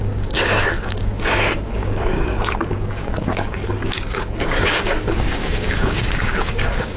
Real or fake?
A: fake